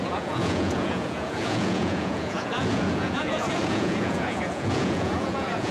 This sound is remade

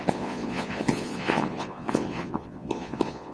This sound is remade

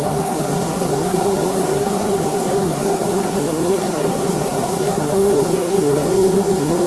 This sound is remade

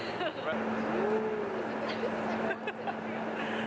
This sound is recorded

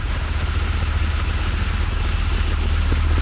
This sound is recorded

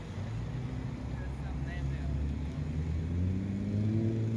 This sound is recorded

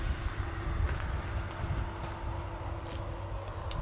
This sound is recorded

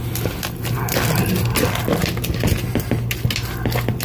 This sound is recorded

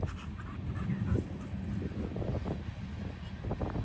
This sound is recorded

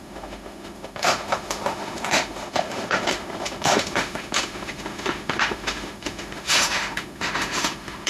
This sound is remade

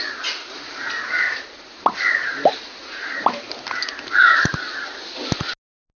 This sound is recorded